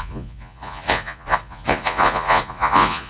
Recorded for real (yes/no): no